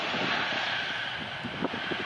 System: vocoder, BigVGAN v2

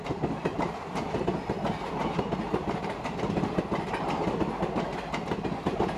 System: none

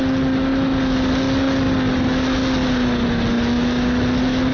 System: none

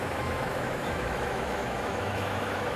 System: autoencoder, DAC-VAE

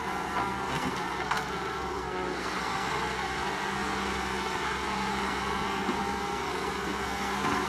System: codec, SNAC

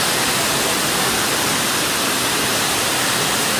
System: none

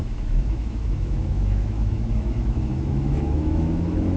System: autoencoder, DAC-VAE